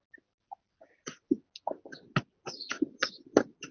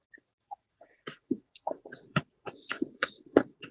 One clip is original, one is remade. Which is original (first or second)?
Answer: first